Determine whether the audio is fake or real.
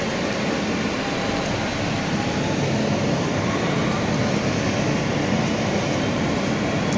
fake